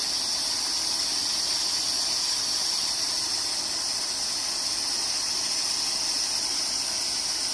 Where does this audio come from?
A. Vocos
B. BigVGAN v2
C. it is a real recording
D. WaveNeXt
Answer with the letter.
C